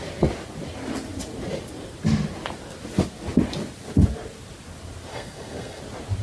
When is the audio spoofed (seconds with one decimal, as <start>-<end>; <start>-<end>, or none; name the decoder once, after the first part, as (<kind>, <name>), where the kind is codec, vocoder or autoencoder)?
5.1-5.8 (codec, SNAC)